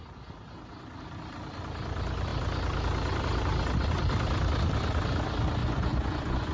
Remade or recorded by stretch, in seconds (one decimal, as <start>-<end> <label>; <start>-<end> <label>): 0.0-5.6 recorded; 5.6-6.5 remade